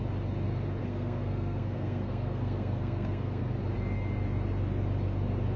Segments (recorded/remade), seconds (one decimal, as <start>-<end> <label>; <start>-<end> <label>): 0.0-0.8 recorded; 0.8-3.4 remade; 3.4-5.6 recorded